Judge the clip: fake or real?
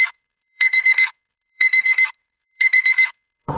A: fake